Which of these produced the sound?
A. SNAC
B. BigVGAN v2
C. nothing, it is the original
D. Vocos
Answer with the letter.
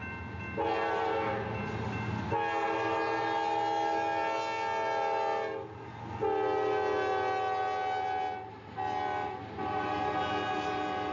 C